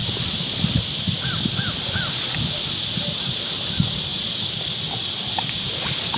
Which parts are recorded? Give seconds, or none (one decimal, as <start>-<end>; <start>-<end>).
0.0-6.2